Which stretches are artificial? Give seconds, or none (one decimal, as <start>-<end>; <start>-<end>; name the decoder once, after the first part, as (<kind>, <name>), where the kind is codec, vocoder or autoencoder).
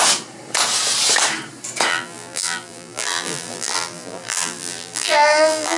1.9-5.8 (vocoder, BigVGAN v2)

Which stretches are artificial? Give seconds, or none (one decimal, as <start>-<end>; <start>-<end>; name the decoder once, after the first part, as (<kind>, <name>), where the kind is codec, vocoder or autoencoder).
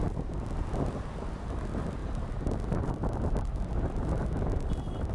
0.0-0.6 (vocoder, BigVGAN v2); 2.0-5.1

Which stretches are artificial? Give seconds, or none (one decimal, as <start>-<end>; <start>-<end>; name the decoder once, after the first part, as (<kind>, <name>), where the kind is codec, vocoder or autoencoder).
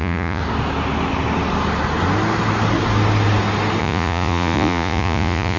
0.0-0.4 (vocoder, Vocos); 3.8-5.6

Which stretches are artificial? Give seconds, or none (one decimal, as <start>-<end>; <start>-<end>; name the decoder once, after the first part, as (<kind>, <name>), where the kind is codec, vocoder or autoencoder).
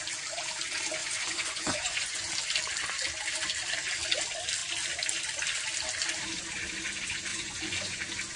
1.0-2.3 (vocoder, Vocos); 7.3-8.0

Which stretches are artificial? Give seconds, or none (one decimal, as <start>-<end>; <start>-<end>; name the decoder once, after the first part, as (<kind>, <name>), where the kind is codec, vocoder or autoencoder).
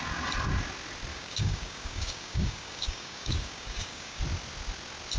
1.1-4.2 (codec, DAC)